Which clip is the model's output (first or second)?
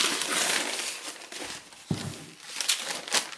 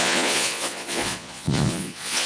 second